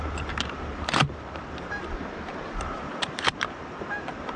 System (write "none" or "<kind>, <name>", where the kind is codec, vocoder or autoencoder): vocoder, BigVGAN v2